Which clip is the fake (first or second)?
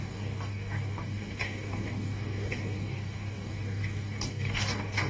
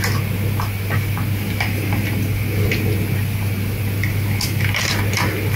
first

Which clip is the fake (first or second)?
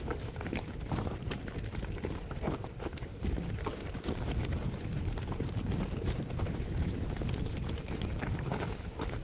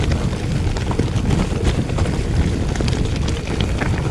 first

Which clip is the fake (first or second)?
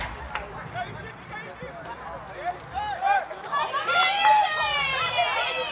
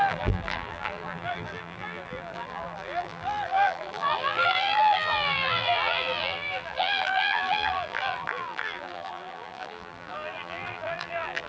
second